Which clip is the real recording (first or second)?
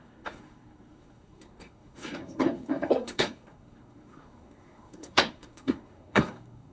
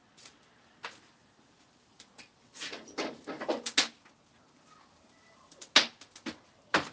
second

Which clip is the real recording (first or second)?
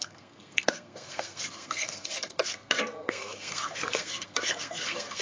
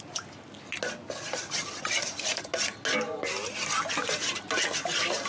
second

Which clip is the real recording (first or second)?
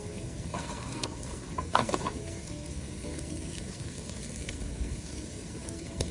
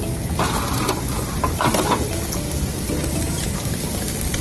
second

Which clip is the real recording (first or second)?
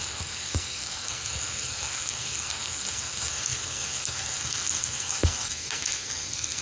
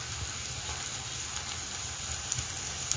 second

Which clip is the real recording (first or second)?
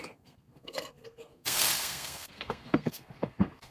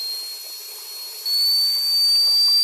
second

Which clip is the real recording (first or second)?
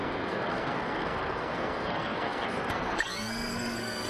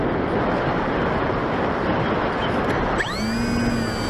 second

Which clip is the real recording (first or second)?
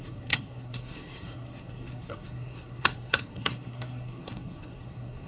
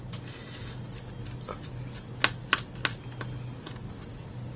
second